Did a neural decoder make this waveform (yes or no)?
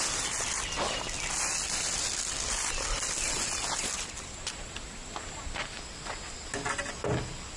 no